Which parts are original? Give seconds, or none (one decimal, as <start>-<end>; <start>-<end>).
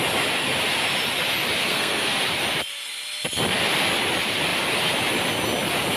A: 0.0-1.6; 2.2-6.0